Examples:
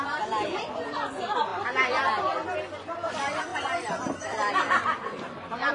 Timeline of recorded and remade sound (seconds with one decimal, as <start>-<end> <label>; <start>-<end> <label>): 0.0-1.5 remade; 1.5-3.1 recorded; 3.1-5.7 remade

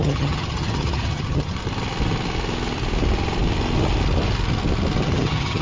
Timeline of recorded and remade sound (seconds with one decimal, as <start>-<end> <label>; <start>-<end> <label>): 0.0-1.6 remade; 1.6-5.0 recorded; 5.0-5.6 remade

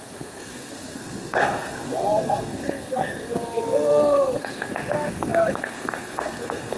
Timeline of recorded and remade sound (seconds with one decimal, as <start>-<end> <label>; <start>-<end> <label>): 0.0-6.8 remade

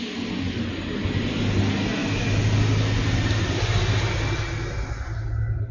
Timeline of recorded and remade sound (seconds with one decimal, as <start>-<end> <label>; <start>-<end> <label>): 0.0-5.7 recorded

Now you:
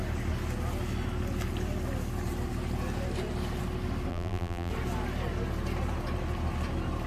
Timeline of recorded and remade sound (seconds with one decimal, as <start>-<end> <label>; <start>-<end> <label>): 0.0-4.1 recorded; 4.1-4.7 remade; 4.7-7.1 recorded